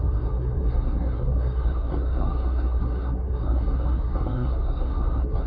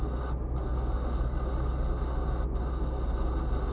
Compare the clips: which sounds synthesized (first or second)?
first